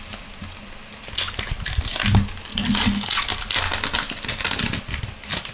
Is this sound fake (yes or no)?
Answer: no